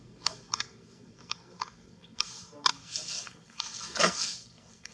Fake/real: fake